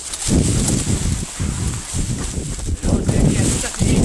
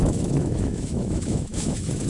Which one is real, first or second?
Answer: first